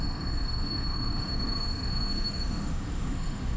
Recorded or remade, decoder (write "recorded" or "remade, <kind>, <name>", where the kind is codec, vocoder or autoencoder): remade, autoencoder, DAC-VAE